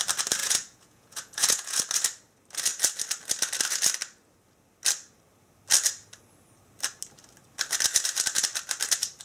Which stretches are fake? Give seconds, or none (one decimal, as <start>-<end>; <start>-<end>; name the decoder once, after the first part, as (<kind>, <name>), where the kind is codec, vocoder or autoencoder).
0.4-1.8 (vocoder, Vocos)